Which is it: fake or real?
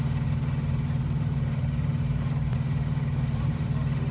fake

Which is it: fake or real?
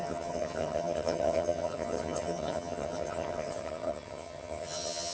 fake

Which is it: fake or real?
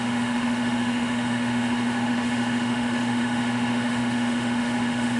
fake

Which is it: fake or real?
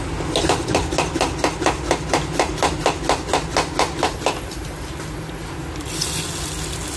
real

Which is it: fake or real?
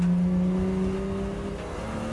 real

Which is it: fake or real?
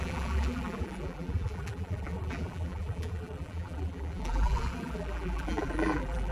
fake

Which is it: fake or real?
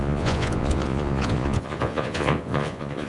fake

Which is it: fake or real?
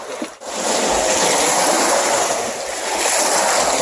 real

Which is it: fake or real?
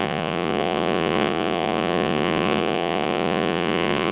fake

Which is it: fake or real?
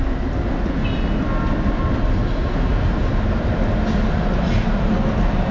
real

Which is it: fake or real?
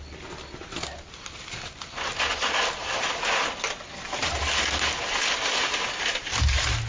real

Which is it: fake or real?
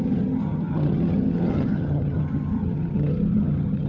fake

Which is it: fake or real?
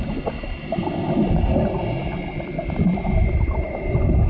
real